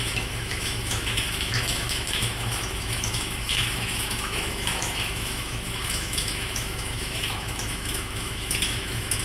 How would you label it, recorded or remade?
remade